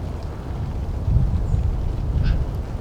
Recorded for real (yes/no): yes